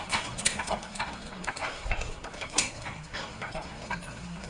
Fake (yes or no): yes